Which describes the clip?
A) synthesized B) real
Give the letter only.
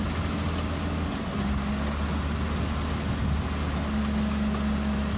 B